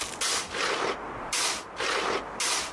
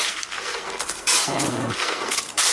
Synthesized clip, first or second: second